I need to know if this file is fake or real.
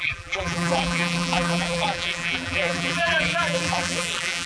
fake